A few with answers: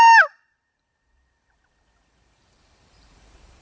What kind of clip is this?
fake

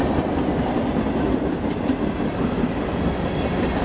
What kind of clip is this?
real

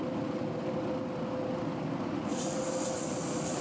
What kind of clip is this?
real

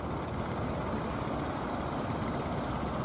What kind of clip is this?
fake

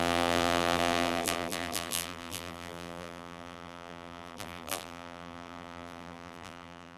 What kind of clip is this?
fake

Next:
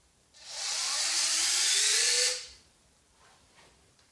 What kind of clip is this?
fake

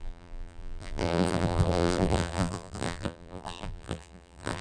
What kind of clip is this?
fake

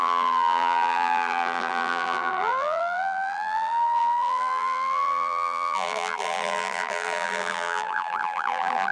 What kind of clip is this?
fake